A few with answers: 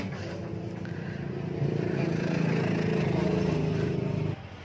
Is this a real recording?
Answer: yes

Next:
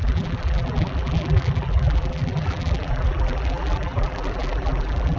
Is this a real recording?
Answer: no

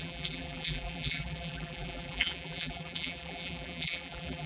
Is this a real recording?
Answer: no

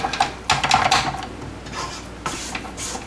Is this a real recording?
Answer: yes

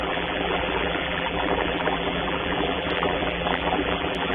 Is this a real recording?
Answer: no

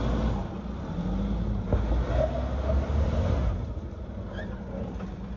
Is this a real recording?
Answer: yes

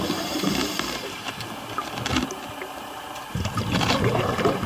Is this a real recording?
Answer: no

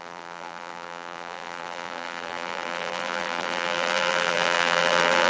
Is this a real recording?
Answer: no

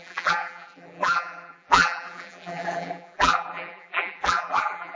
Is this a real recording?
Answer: no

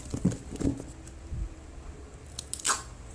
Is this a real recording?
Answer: yes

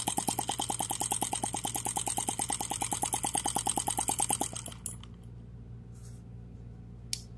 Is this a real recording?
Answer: yes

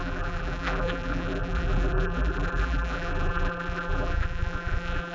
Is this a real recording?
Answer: no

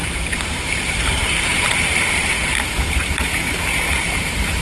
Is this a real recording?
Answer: no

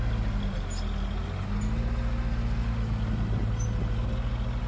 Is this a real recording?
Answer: yes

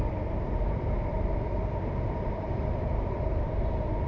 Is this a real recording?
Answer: no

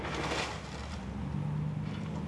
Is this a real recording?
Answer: yes